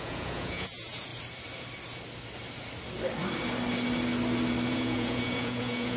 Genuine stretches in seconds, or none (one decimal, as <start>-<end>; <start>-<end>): 1.1-4.7